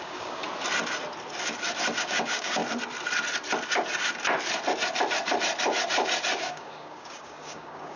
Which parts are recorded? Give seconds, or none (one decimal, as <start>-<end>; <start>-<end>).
0.4-2.0; 2.6-6.4